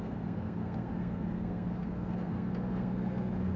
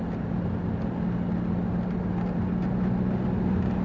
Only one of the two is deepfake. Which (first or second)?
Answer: first